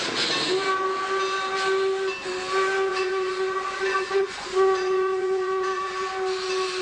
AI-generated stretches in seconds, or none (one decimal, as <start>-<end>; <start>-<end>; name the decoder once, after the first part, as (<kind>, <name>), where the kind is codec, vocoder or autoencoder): 2.9-6.1 (vocoder, Vocos)